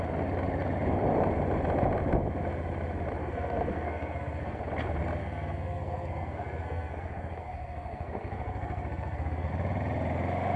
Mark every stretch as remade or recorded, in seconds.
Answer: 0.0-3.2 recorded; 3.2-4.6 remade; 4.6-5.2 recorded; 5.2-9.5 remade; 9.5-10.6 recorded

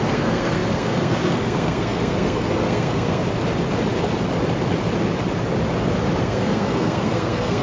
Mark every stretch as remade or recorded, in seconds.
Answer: 0.0-3.2 remade; 3.2-6.2 recorded; 6.2-7.6 remade

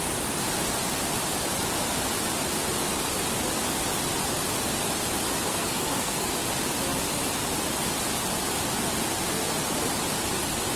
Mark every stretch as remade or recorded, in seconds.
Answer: 0.0-5.5 recorded; 5.5-6.4 remade; 6.4-10.8 recorded

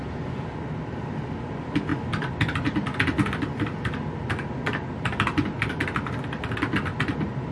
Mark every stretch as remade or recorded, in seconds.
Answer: 0.0-7.5 recorded